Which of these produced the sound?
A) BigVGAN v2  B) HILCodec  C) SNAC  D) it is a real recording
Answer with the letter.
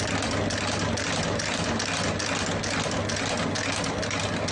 D